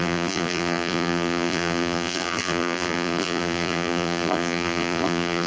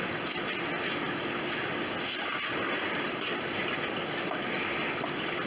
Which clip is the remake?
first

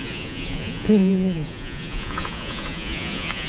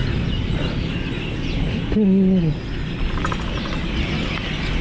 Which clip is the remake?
first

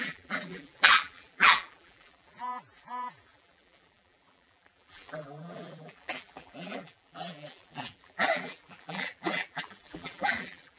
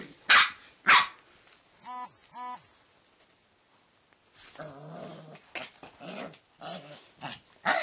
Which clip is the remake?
first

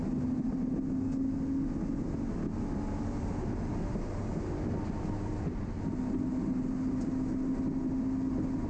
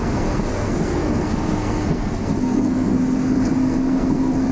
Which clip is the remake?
second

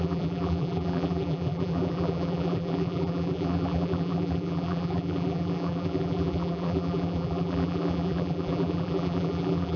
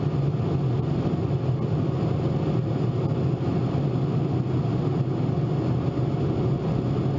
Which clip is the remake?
first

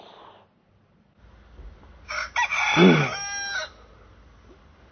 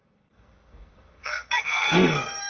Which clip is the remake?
second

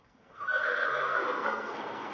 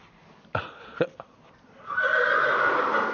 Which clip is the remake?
first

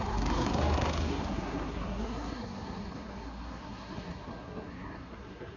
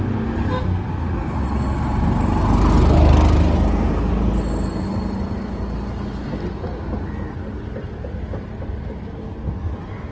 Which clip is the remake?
first